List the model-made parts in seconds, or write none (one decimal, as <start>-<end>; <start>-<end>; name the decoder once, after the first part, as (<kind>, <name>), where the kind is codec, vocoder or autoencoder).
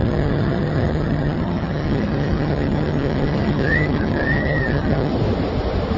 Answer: 0.0-5.1 (vocoder, HiFi-GAN)